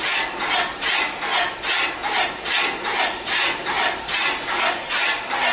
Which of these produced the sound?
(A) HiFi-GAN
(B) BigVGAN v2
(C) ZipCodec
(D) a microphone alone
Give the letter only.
D